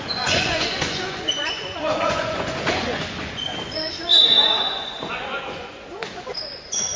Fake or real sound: fake